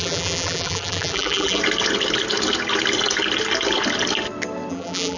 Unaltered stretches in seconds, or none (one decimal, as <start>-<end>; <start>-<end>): 1.6-4.7